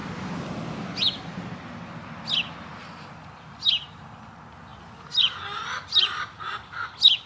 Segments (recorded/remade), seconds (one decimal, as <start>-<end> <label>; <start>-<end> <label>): 0.0-7.3 recorded